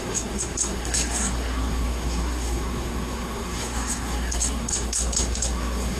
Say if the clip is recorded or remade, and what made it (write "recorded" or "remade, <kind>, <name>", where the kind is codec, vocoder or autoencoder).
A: remade, codec, SNAC